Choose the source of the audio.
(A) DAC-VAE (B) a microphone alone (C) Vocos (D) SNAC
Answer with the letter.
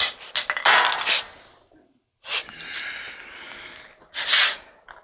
B